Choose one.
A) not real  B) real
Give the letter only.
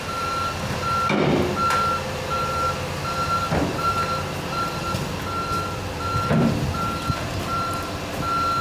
B